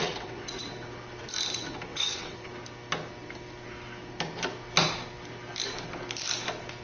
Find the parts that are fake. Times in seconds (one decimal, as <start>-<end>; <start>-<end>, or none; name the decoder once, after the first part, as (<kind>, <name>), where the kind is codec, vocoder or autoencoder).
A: 0.0-0.6 (vocoder, WaveNeXt); 1.9-2.5